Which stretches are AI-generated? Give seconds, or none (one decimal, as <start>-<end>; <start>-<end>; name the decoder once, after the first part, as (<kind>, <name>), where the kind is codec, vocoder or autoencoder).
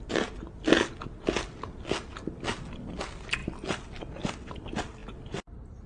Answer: none